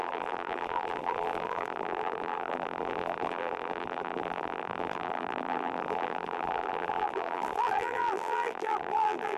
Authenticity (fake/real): fake